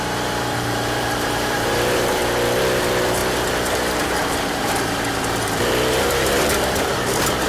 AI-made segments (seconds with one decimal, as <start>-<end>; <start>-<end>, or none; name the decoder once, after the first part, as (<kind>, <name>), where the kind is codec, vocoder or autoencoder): 0.0-2.2 (vocoder, BigVGAN v2); 2.8-3.2; 4.0-7.5